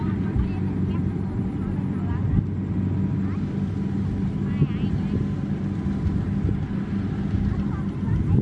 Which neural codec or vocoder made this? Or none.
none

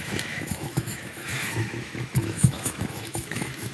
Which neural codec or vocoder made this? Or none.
autoencoder, DAC-VAE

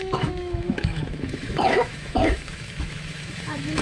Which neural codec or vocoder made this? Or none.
autoencoder, DAC-VAE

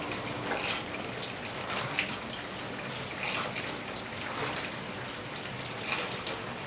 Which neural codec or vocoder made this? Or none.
none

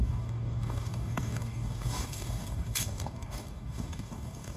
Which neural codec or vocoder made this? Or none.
codec, DAC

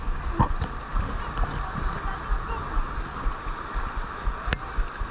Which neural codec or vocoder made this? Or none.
none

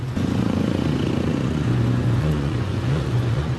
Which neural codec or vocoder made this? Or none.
vocoder, Vocos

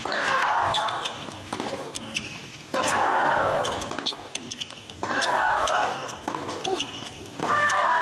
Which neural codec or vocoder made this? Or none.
codec, DAC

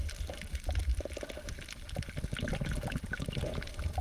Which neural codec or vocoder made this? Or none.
none